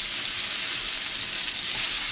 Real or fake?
real